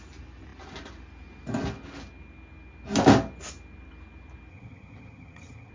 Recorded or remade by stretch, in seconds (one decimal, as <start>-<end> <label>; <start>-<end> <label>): 0.0-4.5 recorded; 4.5-5.7 remade